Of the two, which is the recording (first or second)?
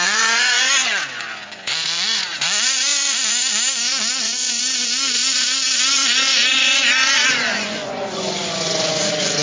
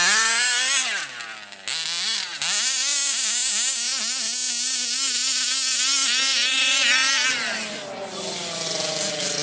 second